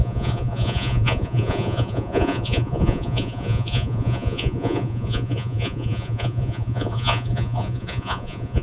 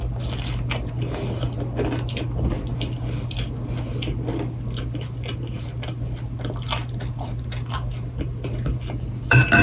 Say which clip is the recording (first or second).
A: second